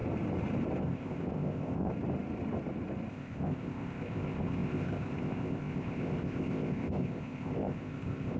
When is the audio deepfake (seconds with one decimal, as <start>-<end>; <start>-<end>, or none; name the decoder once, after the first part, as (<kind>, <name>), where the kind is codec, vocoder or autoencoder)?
0.8-1.9 (codec, ZipCodec); 3.1-8.4